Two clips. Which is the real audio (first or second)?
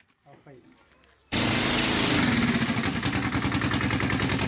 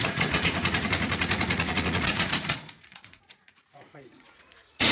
first